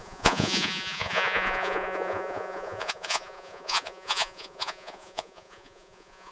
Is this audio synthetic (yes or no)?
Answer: yes